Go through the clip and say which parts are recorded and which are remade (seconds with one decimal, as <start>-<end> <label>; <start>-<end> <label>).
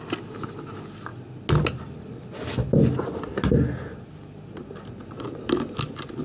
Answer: 0.0-6.2 recorded